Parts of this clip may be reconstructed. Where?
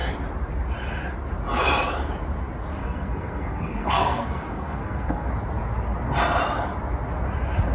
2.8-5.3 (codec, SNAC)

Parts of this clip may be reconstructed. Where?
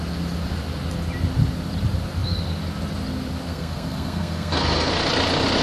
3.5-4.9 (codec, SNAC)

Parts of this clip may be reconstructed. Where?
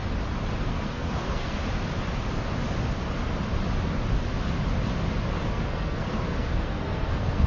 0.6-1.6 (codec, SNAC); 5.5-7.5